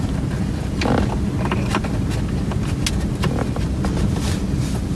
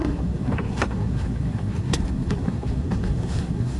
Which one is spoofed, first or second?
second